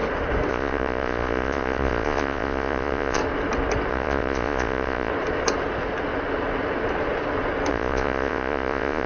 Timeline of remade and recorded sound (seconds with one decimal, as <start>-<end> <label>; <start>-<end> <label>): 0.0-0.5 recorded; 0.5-3.2 remade; 3.2-3.9 recorded; 3.9-5.1 remade; 5.1-7.7 recorded; 7.7-9.1 remade